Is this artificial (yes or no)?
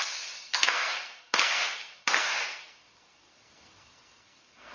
yes